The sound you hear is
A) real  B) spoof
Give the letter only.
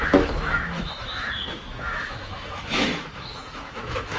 B